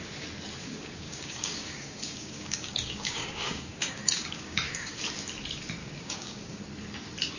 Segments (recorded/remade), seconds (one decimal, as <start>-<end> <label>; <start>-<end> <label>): 0.0-0.6 recorded; 0.6-5.0 remade; 5.0-5.8 recorded; 5.8-6.6 remade; 6.6-7.4 recorded